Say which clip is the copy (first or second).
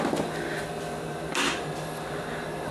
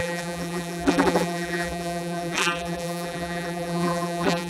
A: second